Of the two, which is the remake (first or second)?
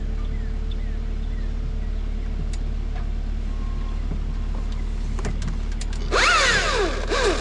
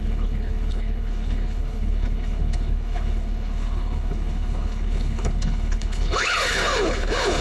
second